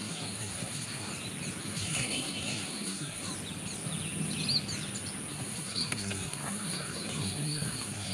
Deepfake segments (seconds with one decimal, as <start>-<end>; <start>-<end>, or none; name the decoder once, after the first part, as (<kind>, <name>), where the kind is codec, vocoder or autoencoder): 0.0-1.1 (codec, SNAC); 1.6-3.3; 5.3-8.1